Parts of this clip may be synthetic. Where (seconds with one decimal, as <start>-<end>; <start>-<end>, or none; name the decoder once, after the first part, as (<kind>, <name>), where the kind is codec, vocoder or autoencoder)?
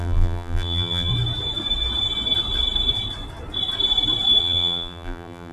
0.0-1.1 (vocoder, BigVGAN v2); 4.4-5.5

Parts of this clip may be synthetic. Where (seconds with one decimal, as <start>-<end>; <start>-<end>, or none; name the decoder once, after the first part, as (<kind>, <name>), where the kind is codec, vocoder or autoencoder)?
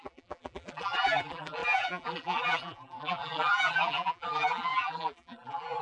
0.0-5.8 (vocoder, BigVGAN v2)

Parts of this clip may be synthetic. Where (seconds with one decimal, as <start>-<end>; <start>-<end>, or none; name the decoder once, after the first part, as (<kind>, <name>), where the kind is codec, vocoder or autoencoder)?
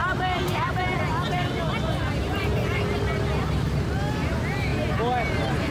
none